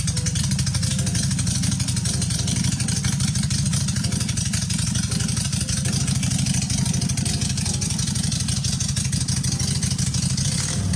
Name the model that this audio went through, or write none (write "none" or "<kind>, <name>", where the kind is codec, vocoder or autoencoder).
none